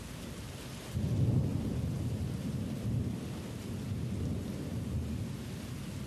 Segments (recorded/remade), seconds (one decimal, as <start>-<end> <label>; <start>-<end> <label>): 0.0-6.1 recorded